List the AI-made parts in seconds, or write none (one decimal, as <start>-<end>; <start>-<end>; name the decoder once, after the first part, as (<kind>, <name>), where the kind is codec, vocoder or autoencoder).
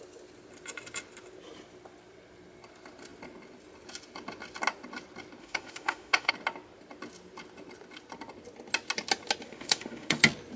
5.4-6.3 (autoencoder, DAC-VAE); 9.5-10.2